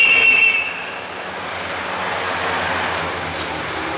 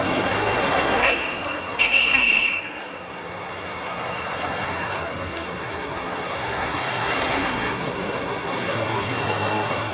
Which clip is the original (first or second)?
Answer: first